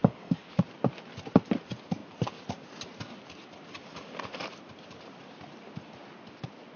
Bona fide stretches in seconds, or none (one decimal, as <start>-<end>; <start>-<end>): 0.6-6.8